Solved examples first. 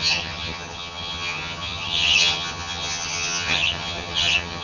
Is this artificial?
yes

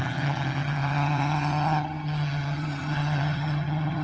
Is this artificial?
yes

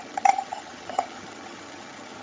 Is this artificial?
yes